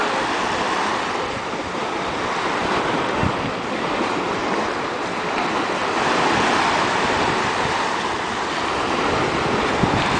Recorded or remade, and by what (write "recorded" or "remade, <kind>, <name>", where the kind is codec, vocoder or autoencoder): recorded